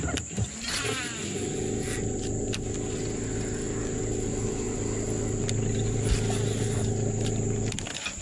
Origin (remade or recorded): recorded